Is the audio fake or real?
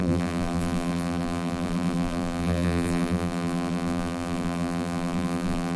fake